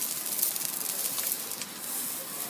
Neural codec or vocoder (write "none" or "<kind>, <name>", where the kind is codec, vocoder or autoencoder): none